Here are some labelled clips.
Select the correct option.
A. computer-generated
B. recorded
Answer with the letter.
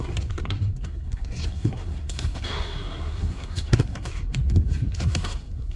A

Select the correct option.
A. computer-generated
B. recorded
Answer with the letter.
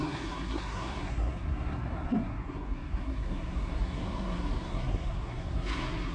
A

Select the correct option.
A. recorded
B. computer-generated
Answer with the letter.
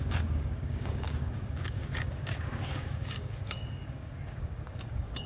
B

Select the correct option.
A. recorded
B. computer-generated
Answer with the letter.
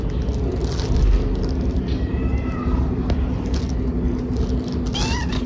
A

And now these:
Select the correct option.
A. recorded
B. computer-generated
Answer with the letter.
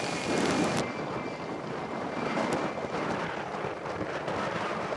A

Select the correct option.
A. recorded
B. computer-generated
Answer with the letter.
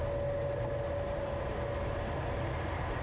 A